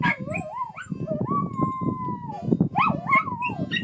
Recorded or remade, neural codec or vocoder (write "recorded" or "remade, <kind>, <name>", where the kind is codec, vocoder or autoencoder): recorded